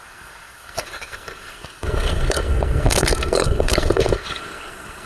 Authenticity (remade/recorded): remade